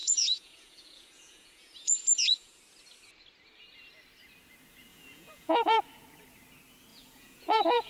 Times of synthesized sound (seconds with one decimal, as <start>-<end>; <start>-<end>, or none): 0.0-2.6; 4.9-5.8; 6.9-7.9